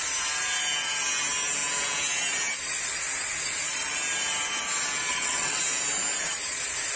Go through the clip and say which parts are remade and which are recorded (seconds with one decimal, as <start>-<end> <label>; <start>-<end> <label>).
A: 0.0-5.1 recorded; 5.1-5.6 remade; 5.6-7.0 recorded